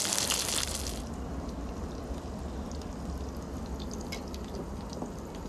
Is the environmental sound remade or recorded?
recorded